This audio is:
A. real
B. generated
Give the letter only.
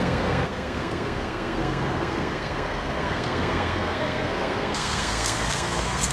B